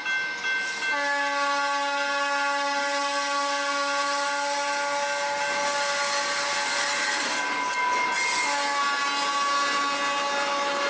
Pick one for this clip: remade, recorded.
recorded